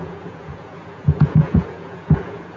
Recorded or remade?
remade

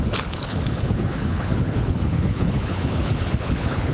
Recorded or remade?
remade